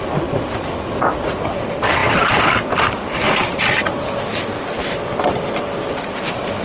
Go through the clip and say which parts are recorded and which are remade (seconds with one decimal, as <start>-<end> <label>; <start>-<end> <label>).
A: 0.0-4.8 recorded; 4.8-6.6 remade